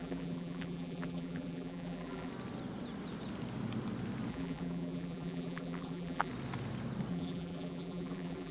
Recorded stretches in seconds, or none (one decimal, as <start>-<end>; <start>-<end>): 2.3-4.3; 6.3-7.1